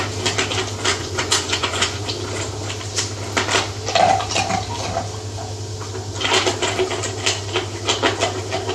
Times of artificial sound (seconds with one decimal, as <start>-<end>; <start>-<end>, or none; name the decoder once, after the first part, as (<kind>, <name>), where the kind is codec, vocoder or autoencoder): 0.9-2.0 (vocoder, Vocos)